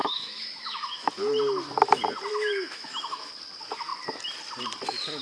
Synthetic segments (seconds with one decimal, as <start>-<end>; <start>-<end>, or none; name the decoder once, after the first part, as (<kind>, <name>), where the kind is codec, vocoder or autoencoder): 0.0-1.1 (autoencoder, DAC-VAE); 2.3-3.3